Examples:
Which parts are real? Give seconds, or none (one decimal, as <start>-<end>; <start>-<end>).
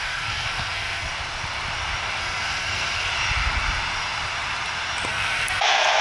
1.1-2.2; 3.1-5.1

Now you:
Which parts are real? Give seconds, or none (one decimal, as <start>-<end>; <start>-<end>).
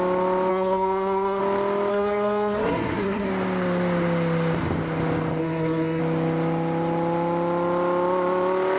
0.0-0.5; 1.4-1.9; 3.3-5.4; 6.0-8.8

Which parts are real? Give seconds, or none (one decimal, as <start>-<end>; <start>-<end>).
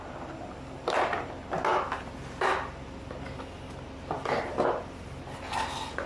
0.0-6.1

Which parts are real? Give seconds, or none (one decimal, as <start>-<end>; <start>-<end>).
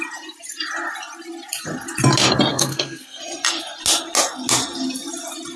0.0-2.5; 3.2-5.6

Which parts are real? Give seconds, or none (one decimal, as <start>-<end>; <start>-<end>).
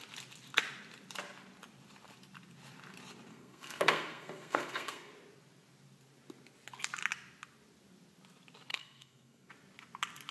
0.0-3.3; 5.1-8.7; 9.5-10.3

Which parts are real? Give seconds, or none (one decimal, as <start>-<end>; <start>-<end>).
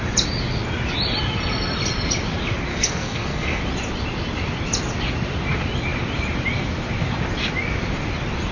0.0-2.7; 3.6-8.5